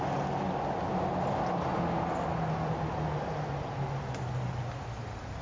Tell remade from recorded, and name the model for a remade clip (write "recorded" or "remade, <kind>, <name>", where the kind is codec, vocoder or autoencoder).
recorded